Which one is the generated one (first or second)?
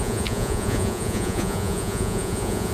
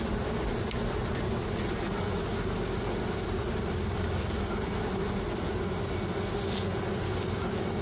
first